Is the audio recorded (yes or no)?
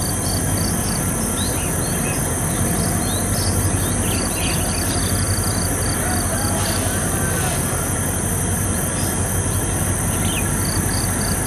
yes